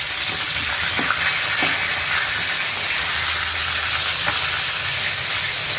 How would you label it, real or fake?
real